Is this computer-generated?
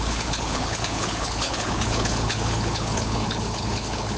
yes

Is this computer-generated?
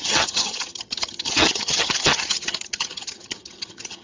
yes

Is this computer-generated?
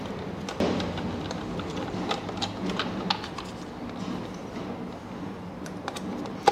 no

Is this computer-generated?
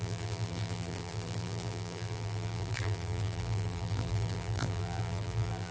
yes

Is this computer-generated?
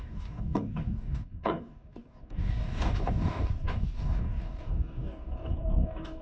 yes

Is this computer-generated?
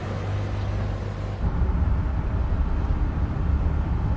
no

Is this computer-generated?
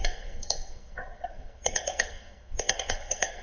yes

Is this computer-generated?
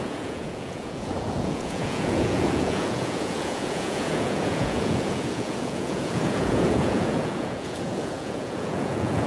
yes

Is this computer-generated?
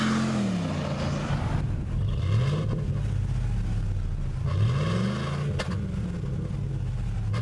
no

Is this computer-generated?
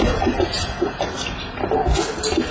no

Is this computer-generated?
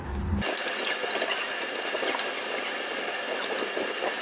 no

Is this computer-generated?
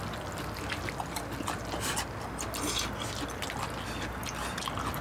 no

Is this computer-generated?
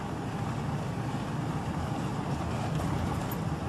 no